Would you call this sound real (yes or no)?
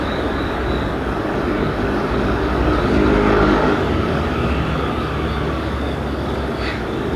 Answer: no